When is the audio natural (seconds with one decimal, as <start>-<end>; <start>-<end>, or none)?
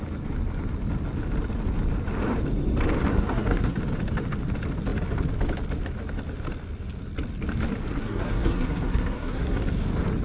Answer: 0.0-3.1; 3.8-8.0; 9.6-10.2